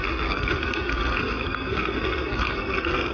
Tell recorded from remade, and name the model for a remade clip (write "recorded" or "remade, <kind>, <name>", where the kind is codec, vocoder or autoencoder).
remade, codec, SNAC